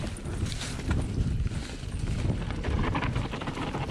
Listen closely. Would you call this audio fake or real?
real